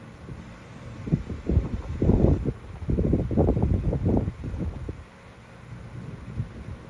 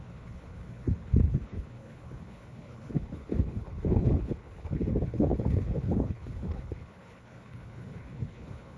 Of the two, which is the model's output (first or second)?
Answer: second